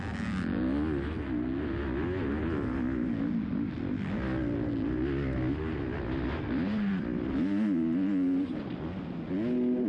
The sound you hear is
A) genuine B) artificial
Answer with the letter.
A